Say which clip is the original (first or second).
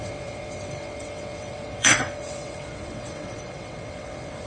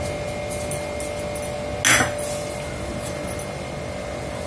second